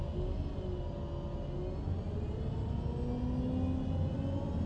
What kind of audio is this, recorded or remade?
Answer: recorded